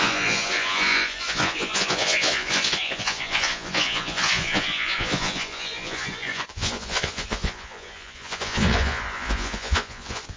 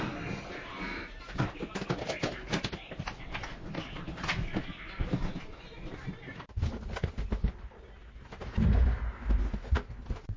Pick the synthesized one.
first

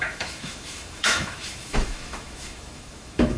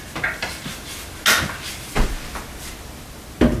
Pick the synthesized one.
first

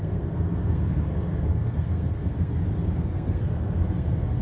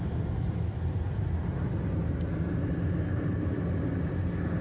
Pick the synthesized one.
first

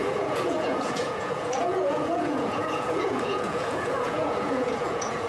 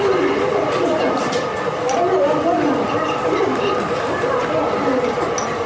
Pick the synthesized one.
first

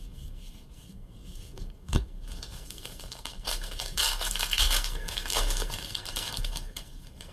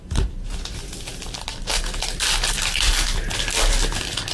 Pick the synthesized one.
first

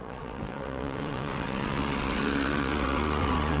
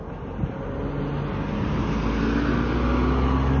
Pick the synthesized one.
first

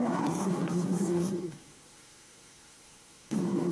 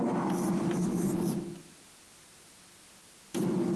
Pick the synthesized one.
first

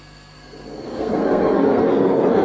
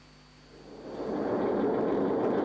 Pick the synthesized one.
first